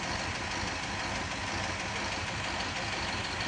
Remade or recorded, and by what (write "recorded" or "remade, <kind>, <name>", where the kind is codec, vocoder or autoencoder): recorded